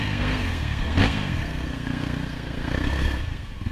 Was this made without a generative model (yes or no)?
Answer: no